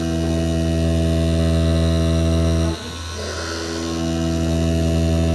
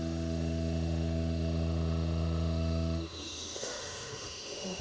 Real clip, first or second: first